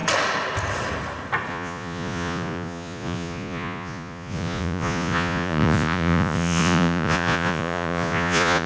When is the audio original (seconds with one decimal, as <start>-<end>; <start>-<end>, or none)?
0.0-1.5